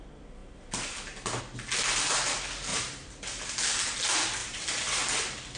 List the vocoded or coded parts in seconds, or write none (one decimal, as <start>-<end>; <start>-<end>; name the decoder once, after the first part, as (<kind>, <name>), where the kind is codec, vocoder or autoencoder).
0.4-1.4 (vocoder, BigVGAN v2); 2.7-3.5; 4.4-5.0